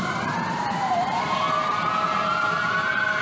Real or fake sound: fake